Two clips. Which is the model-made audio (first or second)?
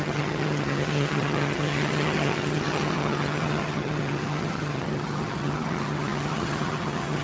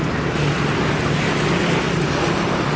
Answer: first